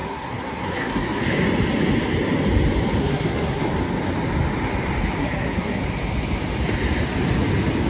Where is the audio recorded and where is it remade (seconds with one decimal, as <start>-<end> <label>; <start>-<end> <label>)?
0.0-1.2 remade; 1.2-3.0 recorded; 3.0-3.7 remade; 3.7-5.2 recorded; 5.2-5.8 remade; 5.8-7.9 recorded